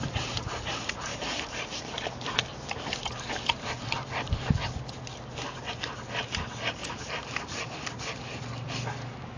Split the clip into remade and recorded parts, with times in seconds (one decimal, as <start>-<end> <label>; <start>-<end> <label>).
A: 0.0-1.1 recorded; 1.1-4.5 remade; 4.5-6.8 recorded; 6.8-8.4 remade; 8.4-9.4 recorded